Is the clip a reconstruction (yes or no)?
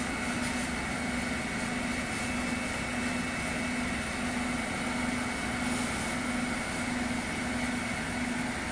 no